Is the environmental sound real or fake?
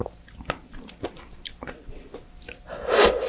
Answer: real